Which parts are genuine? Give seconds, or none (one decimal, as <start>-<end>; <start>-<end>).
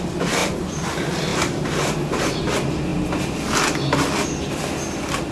0.0-0.4; 0.9-1.3; 2.4-5.3